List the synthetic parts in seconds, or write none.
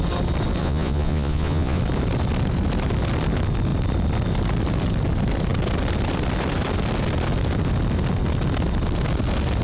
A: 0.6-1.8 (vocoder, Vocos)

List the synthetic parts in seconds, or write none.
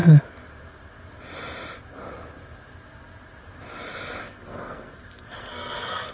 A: 4.2-6.1 (codec, SNAC)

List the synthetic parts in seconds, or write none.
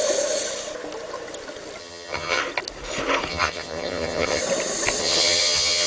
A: 1.8-2.4 (vocoder, HiFi-GAN); 3.3-4.4; 5.0-5.9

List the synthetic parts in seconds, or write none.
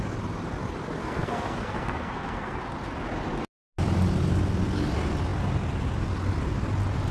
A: 1.0-2.6 (codec, SNAC)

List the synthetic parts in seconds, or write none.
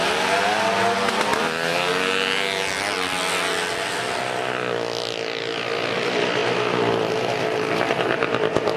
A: none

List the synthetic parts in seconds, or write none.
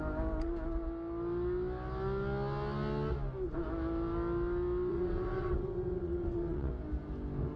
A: 4.9-6.7 (vocoder, WaveNeXt)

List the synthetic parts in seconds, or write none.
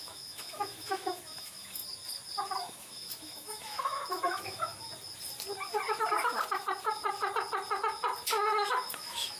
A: 0.0-1.8 (autoencoder, DAC-VAE); 2.6-4.9; 8.5-9.4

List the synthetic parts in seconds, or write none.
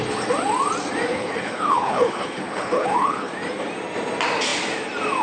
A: 1.1-3.3 (codec, HILCodec)